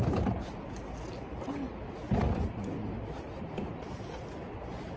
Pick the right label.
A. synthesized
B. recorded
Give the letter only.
B